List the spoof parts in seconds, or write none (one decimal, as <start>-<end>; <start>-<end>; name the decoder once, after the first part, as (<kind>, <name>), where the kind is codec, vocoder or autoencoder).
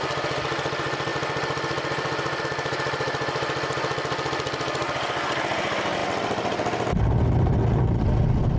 none